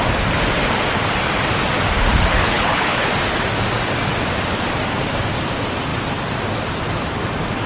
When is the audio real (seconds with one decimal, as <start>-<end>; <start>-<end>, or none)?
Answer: 0.0-2.1; 3.1-7.7